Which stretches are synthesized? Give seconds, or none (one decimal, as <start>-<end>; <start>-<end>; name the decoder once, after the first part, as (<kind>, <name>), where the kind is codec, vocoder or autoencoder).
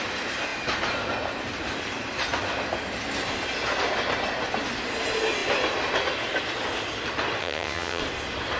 7.4-8.0 (vocoder, HiFi-GAN)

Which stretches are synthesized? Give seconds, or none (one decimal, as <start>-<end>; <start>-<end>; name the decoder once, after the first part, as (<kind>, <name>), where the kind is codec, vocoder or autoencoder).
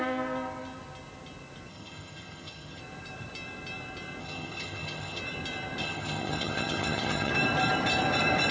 1.7-2.8 (vocoder, HiFi-GAN); 4.2-5.2; 5.8-7.3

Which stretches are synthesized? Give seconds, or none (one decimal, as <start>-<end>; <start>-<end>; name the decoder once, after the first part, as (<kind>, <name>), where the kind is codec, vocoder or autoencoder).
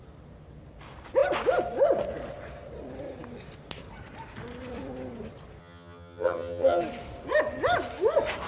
5.6-6.8 (vocoder, HiFi-GAN)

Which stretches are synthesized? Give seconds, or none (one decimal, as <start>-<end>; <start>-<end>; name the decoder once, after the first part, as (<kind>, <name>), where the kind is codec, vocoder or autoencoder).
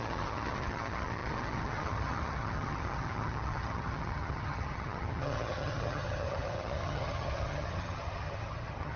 0.0-9.0 (vocoder, HiFi-GAN)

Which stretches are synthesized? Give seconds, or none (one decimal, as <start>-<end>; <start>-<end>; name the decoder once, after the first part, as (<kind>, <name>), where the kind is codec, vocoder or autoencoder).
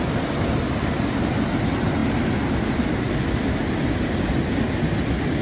none